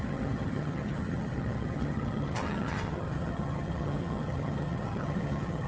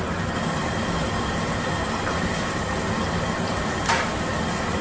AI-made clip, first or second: first